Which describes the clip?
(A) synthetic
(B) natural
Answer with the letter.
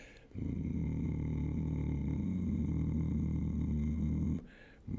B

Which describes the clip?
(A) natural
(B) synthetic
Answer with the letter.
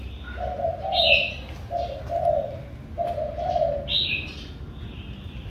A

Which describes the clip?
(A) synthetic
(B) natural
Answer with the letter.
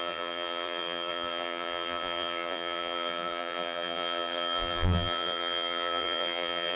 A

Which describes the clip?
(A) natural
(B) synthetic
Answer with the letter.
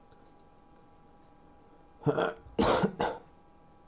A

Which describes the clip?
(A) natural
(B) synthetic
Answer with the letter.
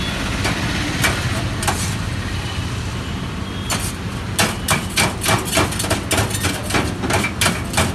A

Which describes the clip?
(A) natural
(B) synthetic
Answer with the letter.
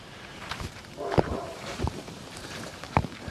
B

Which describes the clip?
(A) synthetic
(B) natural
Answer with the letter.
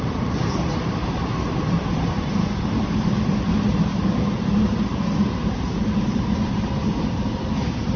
A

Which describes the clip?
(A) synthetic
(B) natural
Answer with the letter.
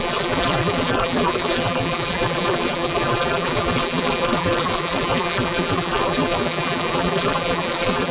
A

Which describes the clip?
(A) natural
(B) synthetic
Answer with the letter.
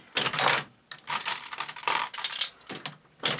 A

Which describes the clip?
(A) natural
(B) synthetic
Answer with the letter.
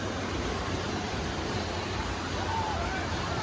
B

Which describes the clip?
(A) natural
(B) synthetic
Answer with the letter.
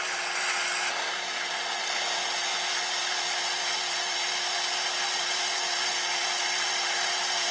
B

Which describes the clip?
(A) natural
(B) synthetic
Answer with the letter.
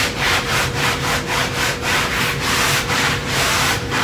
B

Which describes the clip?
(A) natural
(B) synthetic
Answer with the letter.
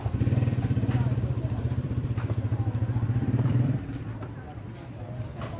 B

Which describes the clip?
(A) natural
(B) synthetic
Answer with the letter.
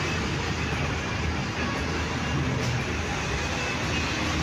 A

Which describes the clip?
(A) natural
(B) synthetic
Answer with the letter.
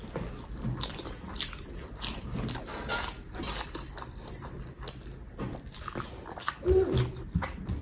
B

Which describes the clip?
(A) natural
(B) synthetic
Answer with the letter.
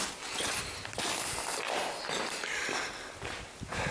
A